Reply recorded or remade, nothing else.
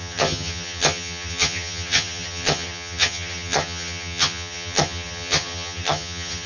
remade